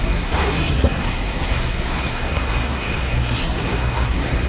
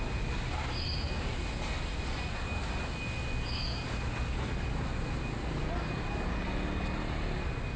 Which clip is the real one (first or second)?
second